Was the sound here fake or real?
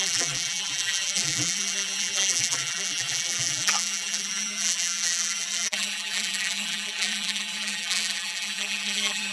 fake